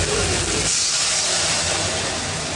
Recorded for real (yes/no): yes